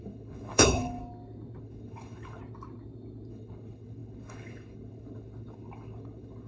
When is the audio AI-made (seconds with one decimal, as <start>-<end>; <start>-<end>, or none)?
0.0-1.0; 1.6-2.4; 3.3-6.5